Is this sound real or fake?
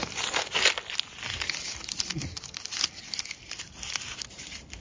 real